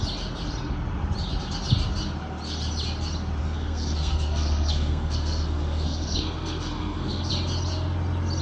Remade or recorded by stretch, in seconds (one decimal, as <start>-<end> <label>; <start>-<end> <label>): 0.0-3.4 recorded; 3.4-7.3 remade; 7.3-8.4 recorded